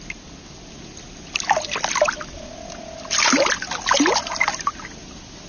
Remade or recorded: recorded